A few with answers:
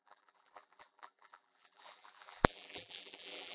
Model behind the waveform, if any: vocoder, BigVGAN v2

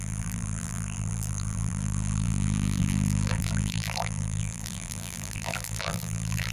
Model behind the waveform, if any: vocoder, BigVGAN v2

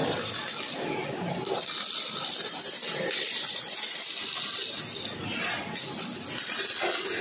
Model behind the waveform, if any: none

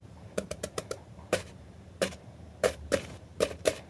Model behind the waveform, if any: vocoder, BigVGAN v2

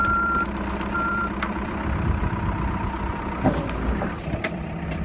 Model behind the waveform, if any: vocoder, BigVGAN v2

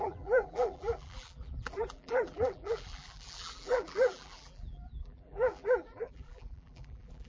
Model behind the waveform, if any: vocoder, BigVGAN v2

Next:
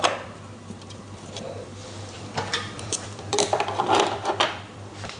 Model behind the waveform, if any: vocoder, BigVGAN v2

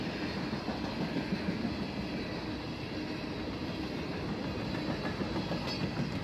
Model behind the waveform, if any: none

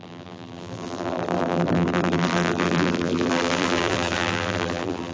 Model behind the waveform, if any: vocoder, BigVGAN v2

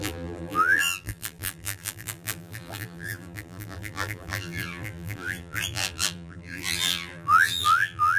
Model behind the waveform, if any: vocoder, BigVGAN v2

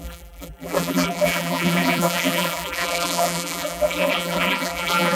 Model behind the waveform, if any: vocoder, BigVGAN v2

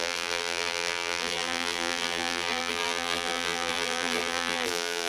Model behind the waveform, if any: vocoder, BigVGAN v2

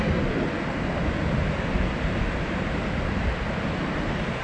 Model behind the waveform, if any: none